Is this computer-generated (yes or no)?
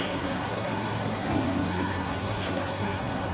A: yes